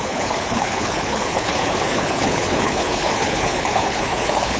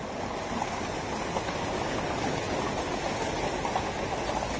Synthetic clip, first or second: first